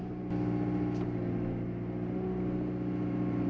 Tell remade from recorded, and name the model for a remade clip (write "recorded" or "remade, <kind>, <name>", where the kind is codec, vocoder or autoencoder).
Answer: recorded